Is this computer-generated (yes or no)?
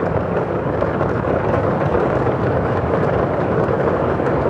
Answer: yes